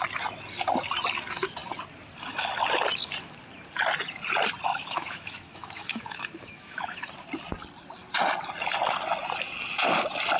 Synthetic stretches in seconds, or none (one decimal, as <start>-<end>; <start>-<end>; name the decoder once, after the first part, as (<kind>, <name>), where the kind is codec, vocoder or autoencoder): 4.7-7.1 (autoencoder, DAC-VAE)